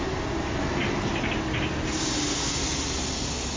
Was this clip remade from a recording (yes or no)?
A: no